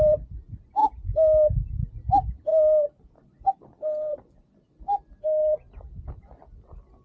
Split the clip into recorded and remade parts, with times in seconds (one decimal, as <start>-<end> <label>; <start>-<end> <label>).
0.0-7.0 recorded